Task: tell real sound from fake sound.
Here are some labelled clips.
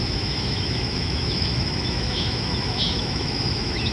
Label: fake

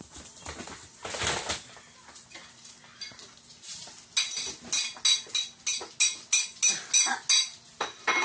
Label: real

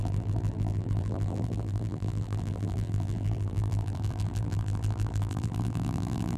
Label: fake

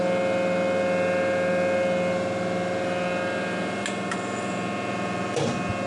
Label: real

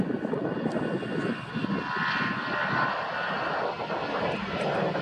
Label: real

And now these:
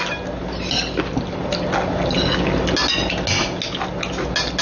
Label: real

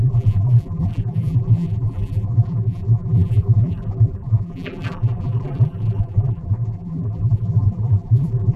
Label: fake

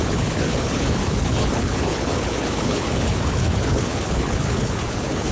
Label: fake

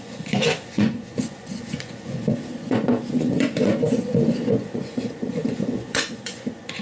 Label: fake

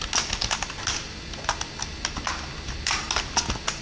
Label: real